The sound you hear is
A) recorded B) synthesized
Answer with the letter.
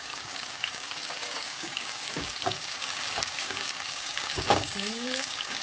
B